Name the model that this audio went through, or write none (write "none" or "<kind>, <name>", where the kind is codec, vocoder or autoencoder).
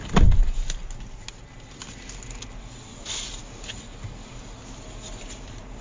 none